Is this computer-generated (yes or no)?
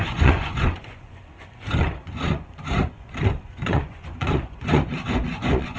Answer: yes